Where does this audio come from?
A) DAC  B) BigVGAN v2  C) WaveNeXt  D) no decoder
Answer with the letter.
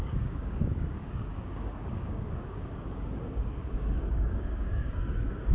A